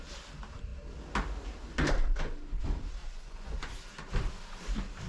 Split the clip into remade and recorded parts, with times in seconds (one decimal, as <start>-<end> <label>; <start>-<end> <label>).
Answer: 0.0-3.0 recorded; 3.0-3.7 remade; 3.7-5.1 recorded